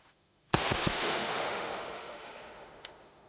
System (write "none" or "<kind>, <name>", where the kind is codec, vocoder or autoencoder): autoencoder, DAC-VAE